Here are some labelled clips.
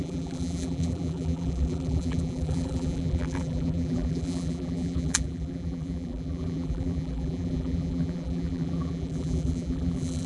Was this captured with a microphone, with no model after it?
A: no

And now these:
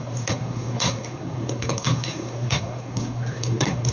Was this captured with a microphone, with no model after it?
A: no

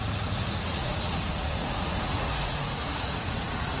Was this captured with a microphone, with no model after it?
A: no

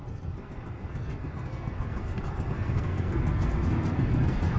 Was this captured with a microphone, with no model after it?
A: no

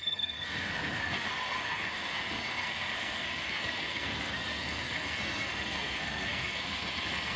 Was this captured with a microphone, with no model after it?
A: no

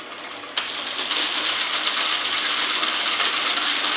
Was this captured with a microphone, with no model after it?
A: yes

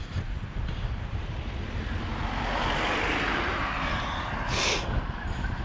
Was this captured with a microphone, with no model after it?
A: yes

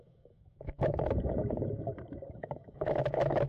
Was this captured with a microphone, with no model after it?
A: no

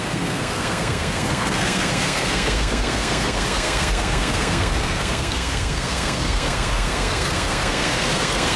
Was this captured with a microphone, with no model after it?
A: no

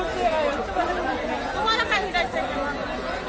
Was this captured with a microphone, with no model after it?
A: yes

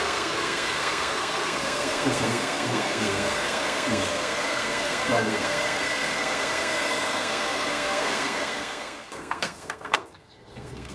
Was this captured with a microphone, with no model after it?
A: no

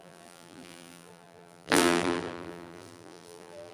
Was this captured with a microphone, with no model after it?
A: no